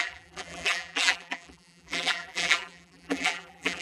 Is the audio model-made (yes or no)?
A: yes